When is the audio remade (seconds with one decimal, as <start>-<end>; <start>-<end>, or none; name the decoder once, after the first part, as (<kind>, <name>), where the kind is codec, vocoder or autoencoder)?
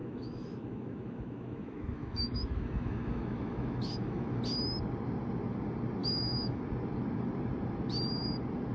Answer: 0.0-4.4 (autoencoder, DAC-VAE); 6.0-6.6